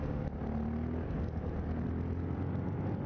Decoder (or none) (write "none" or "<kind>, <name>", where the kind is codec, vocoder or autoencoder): none